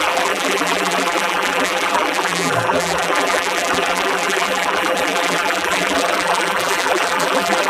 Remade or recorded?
remade